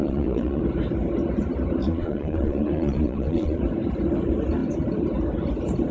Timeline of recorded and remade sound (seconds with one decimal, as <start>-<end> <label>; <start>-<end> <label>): 0.0-0.6 remade; 0.6-1.8 recorded; 1.8-3.6 remade; 3.6-5.9 recorded